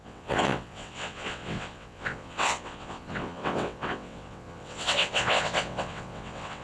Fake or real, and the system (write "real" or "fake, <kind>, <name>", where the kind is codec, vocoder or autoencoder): fake, vocoder, WaveNeXt